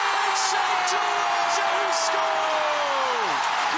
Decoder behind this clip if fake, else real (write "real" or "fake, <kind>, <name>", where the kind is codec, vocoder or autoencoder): real